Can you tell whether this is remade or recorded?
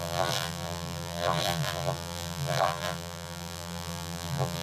remade